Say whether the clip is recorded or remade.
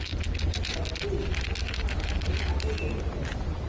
recorded